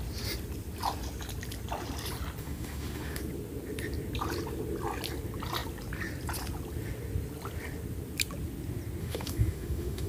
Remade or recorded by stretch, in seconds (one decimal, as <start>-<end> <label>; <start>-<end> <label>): 0.0-2.4 recorded; 2.4-3.2 remade; 3.2-9.0 recorded; 9.0-10.1 remade